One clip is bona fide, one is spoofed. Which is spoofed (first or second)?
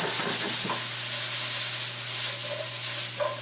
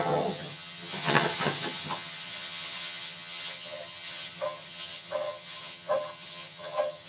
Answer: second